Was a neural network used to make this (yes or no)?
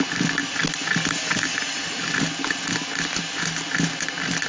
no